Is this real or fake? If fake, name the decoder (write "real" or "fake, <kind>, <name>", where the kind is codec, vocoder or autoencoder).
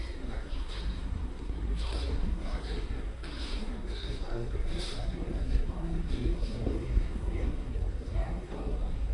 fake, codec, SNAC